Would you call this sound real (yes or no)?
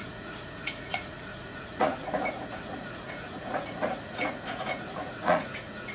no